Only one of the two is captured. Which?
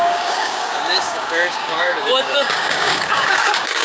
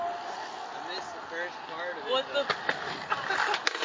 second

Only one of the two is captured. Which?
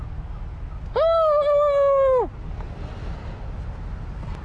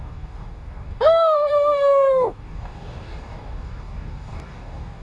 first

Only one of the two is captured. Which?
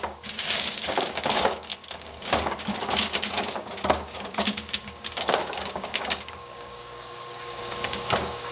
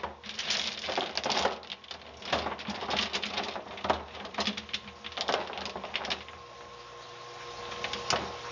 second